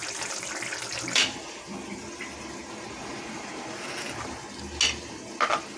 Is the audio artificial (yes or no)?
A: no